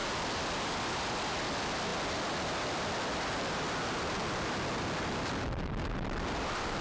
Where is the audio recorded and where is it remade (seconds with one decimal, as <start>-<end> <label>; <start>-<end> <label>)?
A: 0.0-0.7 recorded; 0.7-6.8 remade